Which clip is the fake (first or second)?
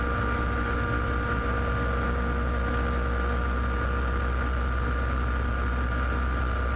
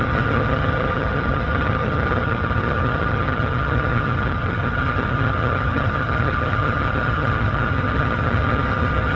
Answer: second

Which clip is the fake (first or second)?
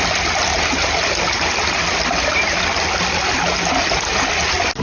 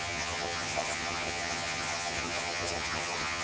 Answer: second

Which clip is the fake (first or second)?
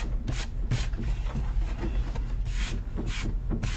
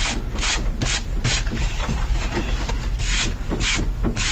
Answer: second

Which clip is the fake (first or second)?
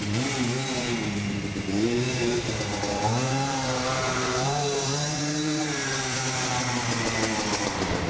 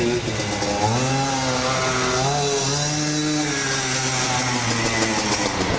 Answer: first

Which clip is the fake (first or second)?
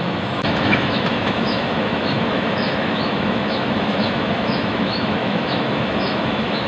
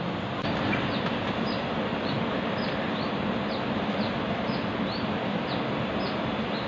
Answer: first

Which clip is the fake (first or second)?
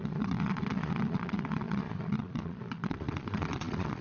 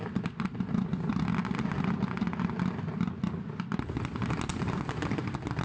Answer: first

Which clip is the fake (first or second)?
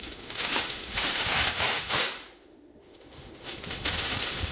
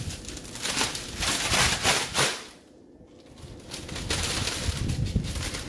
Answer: first